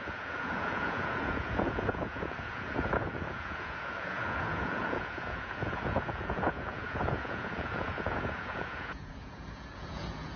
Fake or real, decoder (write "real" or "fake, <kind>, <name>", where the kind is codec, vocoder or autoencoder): fake, vocoder, Vocos